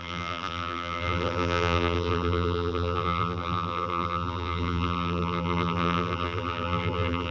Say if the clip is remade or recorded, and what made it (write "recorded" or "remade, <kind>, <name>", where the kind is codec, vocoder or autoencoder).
remade, vocoder, BigVGAN v2